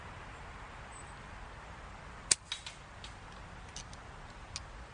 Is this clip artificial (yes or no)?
no